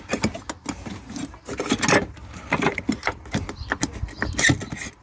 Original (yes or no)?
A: yes